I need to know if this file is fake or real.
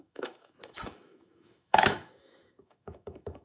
fake